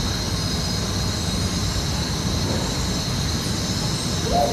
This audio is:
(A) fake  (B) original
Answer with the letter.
B